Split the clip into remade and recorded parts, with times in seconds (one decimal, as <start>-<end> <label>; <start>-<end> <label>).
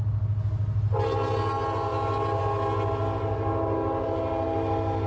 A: 0.0-5.1 recorded